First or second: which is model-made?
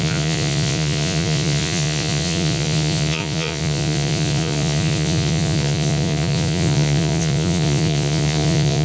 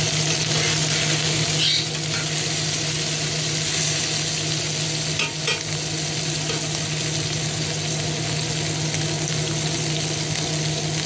first